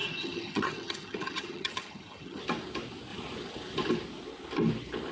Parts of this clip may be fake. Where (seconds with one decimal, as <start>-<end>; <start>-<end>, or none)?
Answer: 0.0-2.4